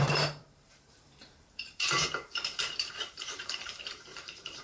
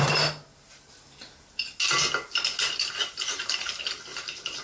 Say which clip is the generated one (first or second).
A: first